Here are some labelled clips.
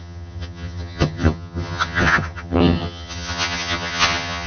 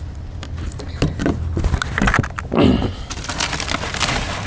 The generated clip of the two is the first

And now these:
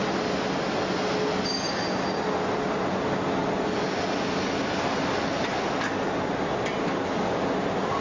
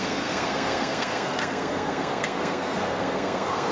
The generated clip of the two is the second